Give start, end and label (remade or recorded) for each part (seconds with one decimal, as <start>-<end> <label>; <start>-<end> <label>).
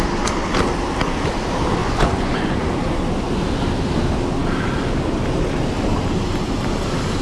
0.0-1.8 recorded; 1.8-2.7 remade; 2.7-7.2 recorded